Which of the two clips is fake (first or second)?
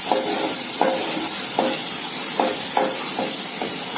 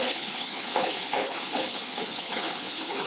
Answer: second